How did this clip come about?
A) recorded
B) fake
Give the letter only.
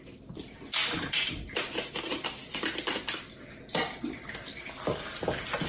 A